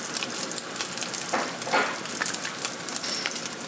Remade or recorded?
recorded